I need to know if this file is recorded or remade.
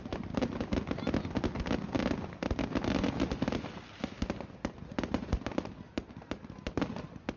recorded